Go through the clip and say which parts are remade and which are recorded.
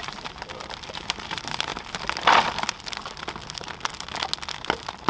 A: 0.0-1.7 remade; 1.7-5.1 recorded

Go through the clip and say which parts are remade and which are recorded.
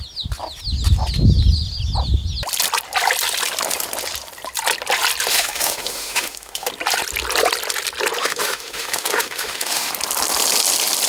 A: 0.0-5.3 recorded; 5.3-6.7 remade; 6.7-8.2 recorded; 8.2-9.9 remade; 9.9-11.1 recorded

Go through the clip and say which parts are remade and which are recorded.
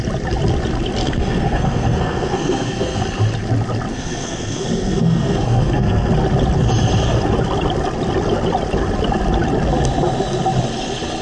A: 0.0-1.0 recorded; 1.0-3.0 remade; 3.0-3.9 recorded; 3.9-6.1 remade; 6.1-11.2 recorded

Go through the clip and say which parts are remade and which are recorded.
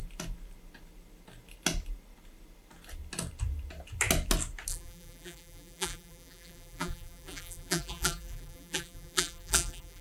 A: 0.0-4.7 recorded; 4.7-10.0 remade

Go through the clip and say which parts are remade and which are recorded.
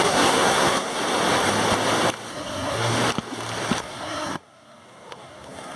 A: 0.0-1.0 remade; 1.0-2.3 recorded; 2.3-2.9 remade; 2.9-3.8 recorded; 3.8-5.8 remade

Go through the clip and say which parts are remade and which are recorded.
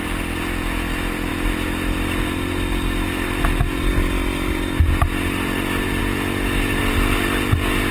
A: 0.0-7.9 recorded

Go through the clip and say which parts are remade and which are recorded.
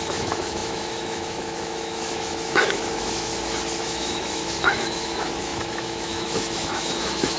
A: 0.0-3.3 remade; 3.3-3.8 recorded; 3.8-7.4 remade